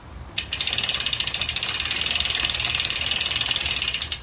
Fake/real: real